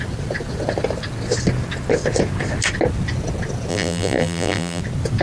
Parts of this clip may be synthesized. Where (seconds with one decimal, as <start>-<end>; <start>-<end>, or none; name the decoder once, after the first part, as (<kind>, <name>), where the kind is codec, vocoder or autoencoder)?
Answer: 3.7-4.8 (vocoder, BigVGAN v2)